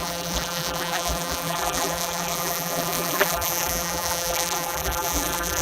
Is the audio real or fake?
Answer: fake